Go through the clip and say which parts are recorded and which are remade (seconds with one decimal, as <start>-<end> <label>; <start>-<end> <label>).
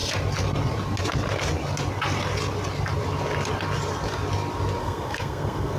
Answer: 0.0-4.8 recorded; 4.8-5.8 remade